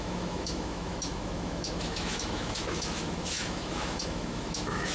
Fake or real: fake